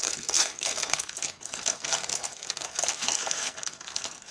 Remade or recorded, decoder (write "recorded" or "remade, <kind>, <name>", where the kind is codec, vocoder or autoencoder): remade, codec, SNAC